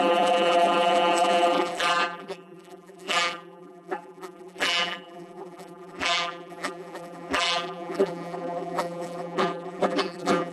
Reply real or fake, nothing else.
fake